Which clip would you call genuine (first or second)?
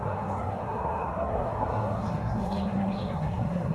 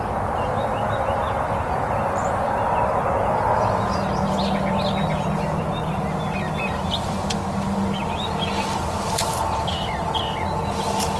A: second